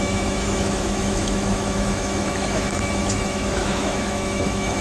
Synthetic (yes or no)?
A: yes